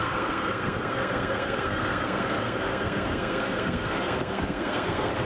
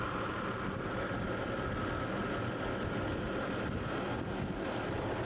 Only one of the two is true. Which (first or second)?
second